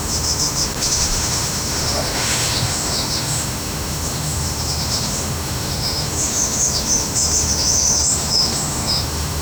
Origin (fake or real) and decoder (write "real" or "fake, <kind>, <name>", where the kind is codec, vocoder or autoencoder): fake, autoencoder, DAC-VAE